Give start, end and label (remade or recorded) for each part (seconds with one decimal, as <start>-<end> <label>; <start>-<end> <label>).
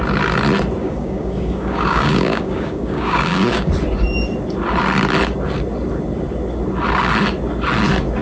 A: 0.0-0.8 recorded; 0.8-3.7 remade; 3.7-8.2 recorded